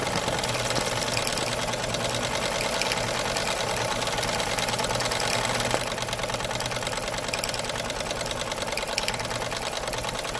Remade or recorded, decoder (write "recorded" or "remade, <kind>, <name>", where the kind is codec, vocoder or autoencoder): recorded